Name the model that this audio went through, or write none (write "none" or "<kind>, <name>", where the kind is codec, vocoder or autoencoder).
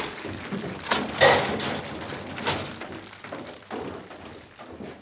none